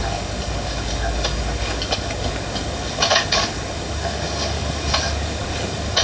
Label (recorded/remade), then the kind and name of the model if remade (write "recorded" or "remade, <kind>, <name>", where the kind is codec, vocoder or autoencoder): remade, codec, DAC